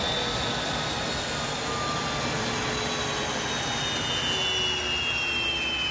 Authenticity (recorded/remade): recorded